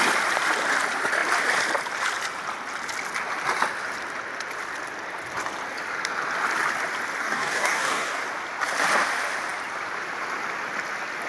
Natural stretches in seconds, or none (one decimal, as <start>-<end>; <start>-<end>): 0.0-7.2; 8.2-11.3